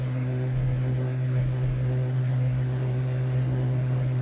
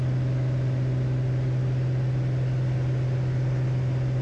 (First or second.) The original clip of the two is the second